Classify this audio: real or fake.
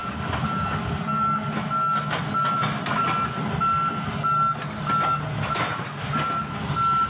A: real